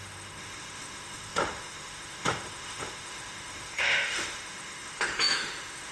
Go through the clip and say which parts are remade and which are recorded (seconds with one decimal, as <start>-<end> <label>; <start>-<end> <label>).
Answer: 0.0-5.9 remade